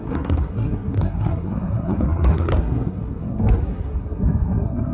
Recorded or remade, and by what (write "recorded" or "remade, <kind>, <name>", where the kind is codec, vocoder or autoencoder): remade, codec, SNAC